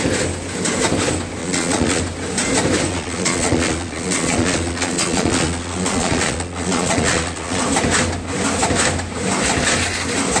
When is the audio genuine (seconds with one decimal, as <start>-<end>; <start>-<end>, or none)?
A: 0.0-1.4; 2.0-2.9; 7.6-10.4